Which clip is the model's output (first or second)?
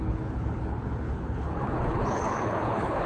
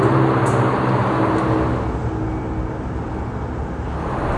first